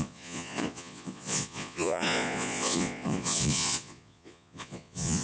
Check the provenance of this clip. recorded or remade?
remade